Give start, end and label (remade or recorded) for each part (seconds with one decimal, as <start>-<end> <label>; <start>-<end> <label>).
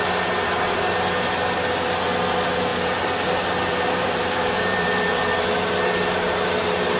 0.0-2.7 recorded; 2.7-5.2 remade; 5.2-7.0 recorded